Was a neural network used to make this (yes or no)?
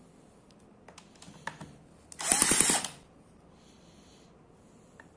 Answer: no